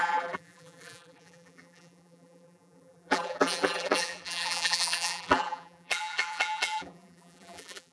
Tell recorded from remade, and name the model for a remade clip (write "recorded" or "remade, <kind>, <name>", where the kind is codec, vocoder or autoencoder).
remade, vocoder, BigVGAN v2